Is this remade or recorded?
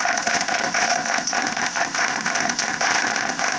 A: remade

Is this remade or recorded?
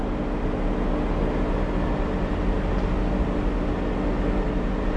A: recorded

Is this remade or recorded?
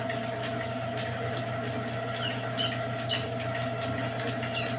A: recorded